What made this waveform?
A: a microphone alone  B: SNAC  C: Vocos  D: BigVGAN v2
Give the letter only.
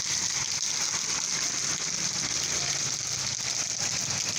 A